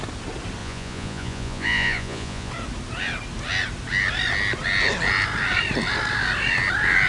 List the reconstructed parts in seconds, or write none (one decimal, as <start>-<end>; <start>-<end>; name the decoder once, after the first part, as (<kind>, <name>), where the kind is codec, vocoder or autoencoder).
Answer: 0.6-2.5 (vocoder, Vocos)